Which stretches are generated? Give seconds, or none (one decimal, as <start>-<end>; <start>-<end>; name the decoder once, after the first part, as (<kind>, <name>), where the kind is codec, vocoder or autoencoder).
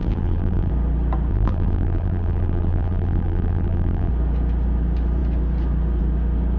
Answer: 0.0-0.7 (vocoder, BigVGAN v2); 1.3-4.1